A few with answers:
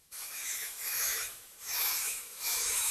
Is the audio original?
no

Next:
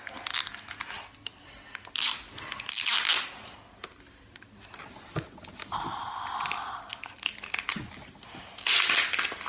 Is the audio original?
yes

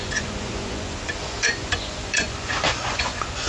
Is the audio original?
no